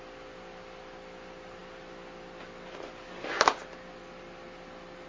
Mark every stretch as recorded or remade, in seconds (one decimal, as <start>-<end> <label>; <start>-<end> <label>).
0.0-5.1 recorded